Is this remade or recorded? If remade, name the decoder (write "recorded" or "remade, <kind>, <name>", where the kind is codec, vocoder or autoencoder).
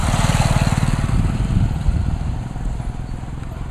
recorded